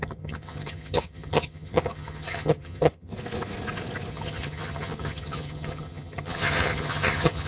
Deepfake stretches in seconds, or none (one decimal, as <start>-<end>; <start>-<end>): 0.0-3.1; 4.1-7.5